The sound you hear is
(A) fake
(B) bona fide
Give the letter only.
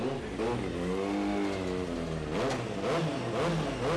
B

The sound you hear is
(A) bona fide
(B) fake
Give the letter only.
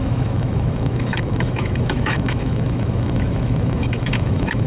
B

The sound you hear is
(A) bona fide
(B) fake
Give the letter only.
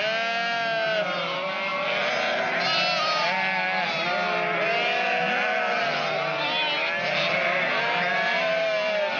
A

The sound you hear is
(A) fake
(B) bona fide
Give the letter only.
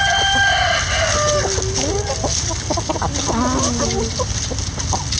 B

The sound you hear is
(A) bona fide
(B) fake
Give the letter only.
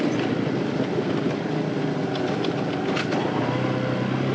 A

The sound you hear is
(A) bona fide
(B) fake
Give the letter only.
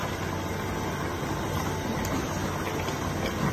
A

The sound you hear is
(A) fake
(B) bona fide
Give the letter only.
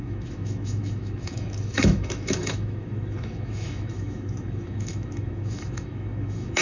A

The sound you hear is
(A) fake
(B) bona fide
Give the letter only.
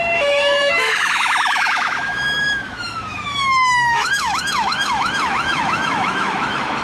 A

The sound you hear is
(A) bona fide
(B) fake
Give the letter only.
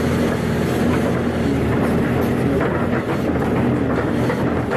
A